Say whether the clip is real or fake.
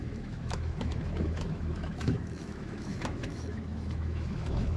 fake